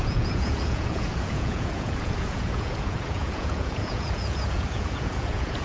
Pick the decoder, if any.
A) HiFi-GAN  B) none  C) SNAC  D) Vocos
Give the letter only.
D